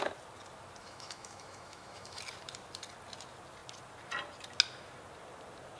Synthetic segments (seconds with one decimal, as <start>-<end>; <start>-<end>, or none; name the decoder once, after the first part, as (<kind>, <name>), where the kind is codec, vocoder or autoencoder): 0.8-2.2 (autoencoder, DAC-VAE)